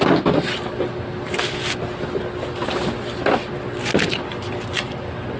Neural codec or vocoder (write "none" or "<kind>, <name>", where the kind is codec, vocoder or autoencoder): none